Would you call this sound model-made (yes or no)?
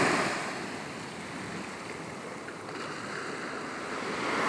no